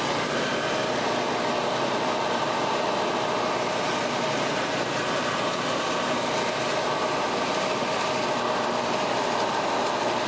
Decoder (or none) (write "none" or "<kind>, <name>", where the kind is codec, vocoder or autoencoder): none